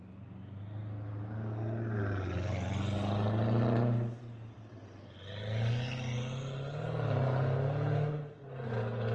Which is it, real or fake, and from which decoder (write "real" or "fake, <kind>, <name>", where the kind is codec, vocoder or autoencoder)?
real